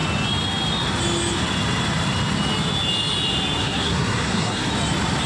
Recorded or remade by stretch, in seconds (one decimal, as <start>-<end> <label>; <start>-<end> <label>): 0.0-3.6 recorded; 3.6-4.7 remade; 4.7-5.3 recorded